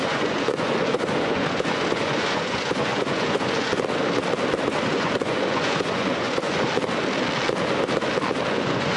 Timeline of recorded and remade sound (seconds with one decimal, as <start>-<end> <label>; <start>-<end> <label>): 0.0-3.7 remade; 3.7-4.8 recorded; 4.8-6.7 remade; 6.7-8.5 recorded; 8.5-9.0 remade